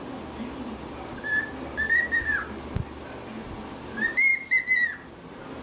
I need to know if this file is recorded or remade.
recorded